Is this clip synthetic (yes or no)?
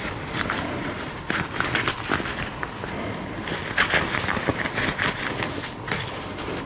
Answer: yes